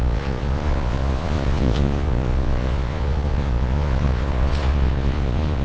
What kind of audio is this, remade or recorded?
remade